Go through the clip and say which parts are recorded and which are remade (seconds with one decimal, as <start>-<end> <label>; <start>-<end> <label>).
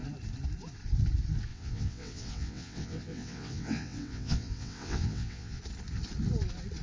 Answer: 0.0-1.5 recorded; 1.5-5.6 remade; 5.6-6.8 recorded